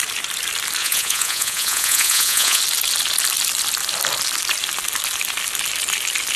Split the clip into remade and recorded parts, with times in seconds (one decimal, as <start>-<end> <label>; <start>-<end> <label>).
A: 0.0-0.8 recorded; 0.8-2.6 remade; 2.6-6.4 recorded